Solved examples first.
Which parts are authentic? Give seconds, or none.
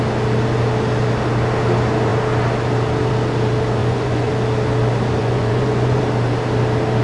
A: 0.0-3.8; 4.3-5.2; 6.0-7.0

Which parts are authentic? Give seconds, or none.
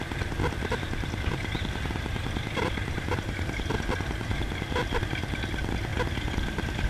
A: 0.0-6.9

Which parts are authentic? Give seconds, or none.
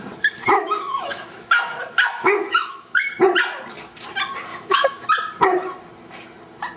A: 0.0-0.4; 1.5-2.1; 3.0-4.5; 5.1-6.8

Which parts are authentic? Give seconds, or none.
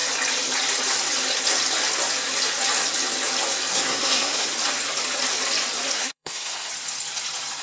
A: 0.0-3.7; 4.5-5.9; 6.7-7.6